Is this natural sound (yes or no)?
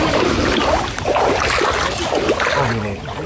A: yes